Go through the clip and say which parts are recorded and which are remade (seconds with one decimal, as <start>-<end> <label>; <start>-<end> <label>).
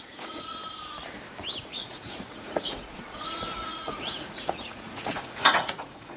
0.0-0.6 remade; 0.6-1.6 recorded; 1.6-6.2 remade